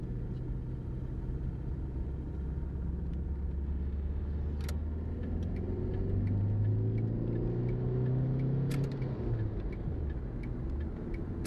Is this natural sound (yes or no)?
yes